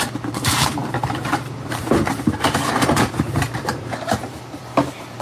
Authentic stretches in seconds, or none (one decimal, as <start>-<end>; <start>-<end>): none